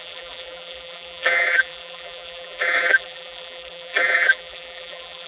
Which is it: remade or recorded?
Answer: remade